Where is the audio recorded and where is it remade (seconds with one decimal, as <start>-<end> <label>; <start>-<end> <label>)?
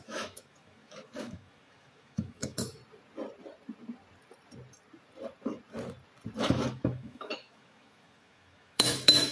0.0-2.8 remade; 2.8-6.4 recorded; 6.4-9.3 remade